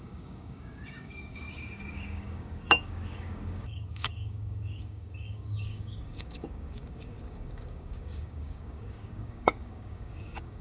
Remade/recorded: remade